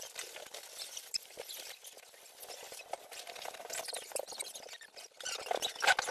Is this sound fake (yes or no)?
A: no